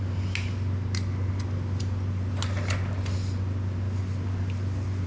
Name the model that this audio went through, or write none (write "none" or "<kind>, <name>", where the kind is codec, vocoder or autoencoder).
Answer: none